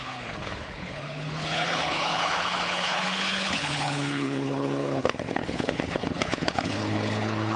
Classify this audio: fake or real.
fake